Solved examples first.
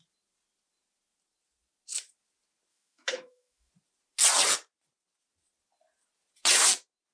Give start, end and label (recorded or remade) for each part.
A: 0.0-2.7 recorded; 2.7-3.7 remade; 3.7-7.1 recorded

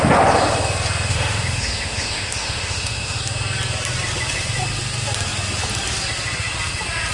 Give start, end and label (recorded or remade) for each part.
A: 0.0-1.1 recorded; 1.1-3.2 remade; 3.2-7.1 recorded

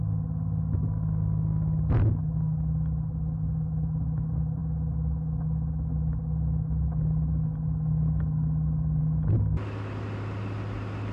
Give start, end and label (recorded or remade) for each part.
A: 0.0-11.1 recorded

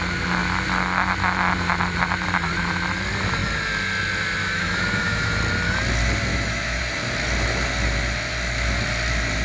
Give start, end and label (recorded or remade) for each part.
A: 0.0-4.4 recorded; 4.4-5.4 remade; 5.4-6.3 recorded; 6.3-6.8 remade; 6.8-9.4 recorded

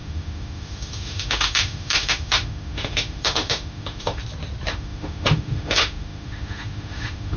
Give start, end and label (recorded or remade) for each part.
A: 0.0-4.2 remade; 4.2-4.7 recorded; 4.7-7.4 remade

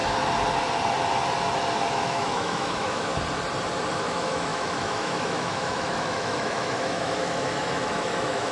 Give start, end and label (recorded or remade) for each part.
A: 0.0-1.9 recorded; 1.9-3.1 remade; 3.1-3.9 recorded; 3.9-8.5 remade

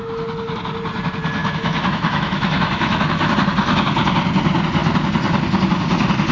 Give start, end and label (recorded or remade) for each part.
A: 0.0-1.4 recorded; 1.4-3.3 remade; 3.3-6.3 recorded